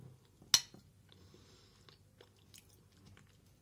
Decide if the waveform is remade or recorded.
recorded